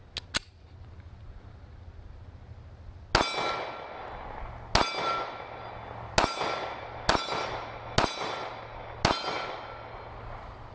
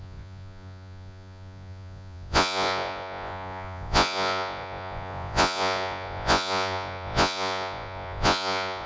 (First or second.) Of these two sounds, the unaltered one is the first